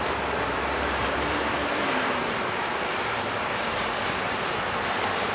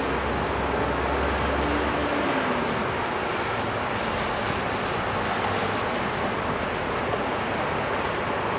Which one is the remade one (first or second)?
first